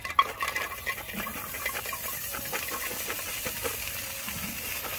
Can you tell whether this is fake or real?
real